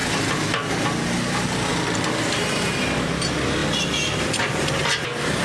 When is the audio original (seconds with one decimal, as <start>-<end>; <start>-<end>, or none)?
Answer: 0.0-5.4